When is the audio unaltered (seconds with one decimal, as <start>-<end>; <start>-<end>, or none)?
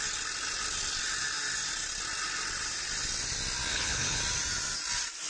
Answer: 0.0-3.7; 4.2-5.3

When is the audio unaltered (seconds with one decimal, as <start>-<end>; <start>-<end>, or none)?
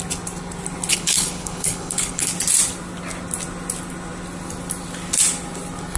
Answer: 0.0-0.9; 2.3-6.0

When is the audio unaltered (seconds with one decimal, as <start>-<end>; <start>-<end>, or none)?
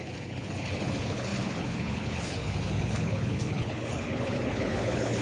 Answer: none